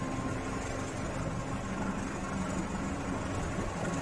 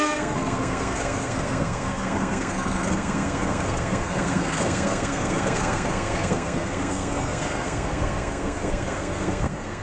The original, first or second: first